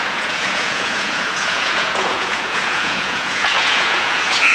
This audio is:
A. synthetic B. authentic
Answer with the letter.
A